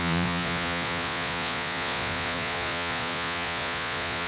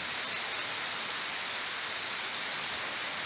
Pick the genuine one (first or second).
second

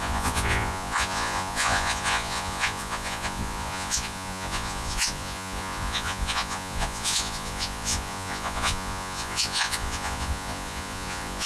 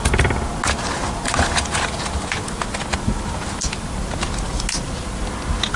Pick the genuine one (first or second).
second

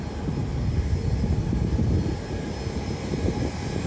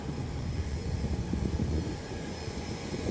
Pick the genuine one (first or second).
first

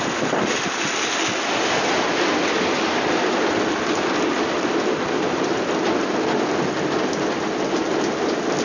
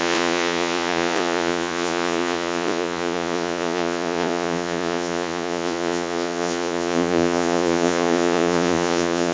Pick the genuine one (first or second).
first